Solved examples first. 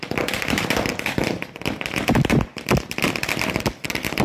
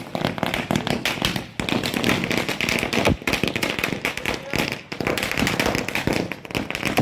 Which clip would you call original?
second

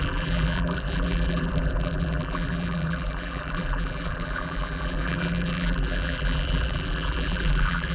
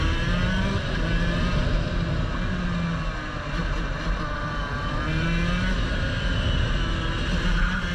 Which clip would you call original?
second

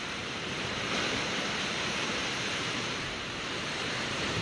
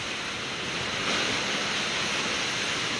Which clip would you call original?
second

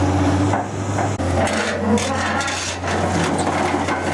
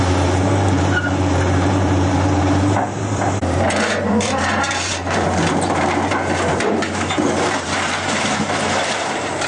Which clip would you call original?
first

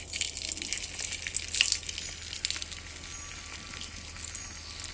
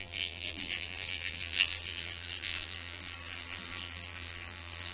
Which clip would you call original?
first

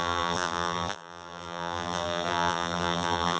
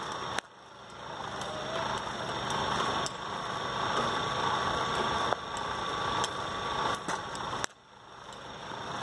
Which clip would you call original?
second